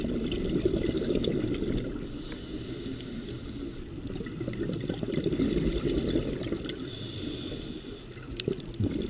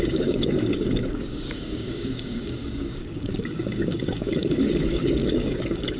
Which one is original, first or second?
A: first